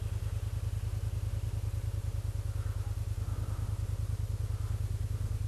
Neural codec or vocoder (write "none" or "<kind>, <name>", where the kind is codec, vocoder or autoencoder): none